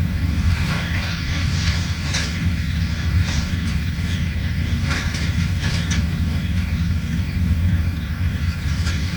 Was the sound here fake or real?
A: fake